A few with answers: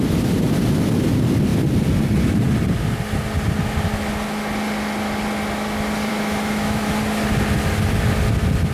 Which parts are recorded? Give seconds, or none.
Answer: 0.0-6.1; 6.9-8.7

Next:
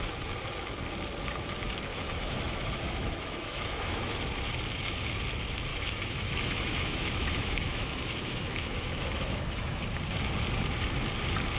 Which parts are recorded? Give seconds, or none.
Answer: 0.0-1.9; 4.2-5.7; 9.8-11.6

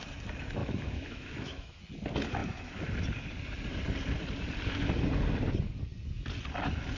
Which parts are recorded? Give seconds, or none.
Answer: 0.0-0.6; 1.8-7.0

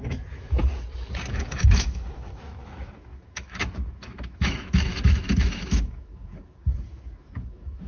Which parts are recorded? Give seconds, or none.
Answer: 0.6-1.3